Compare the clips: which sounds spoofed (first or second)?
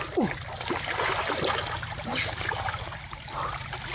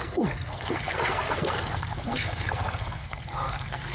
second